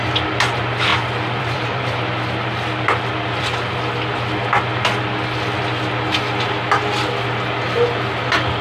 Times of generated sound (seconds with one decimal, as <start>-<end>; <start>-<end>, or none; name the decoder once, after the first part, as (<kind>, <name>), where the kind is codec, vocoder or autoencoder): 0.9-3.8 (vocoder, BigVGAN v2)